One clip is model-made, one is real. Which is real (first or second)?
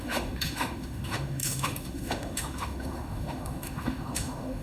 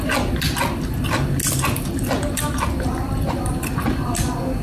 second